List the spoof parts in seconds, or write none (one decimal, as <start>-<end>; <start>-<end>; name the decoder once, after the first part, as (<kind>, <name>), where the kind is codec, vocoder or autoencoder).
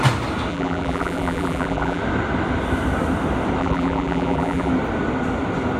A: 0.5-2.0 (vocoder, BigVGAN v2); 3.6-4.7